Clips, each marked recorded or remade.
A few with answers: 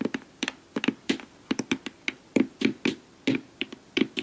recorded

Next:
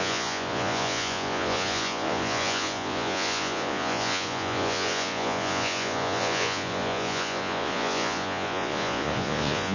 remade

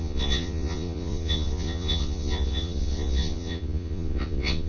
remade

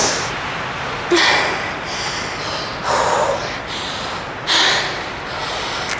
recorded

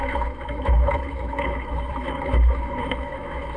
remade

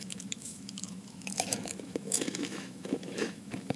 remade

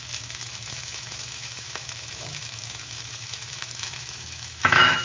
remade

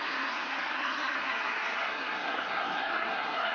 remade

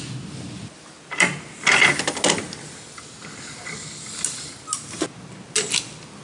recorded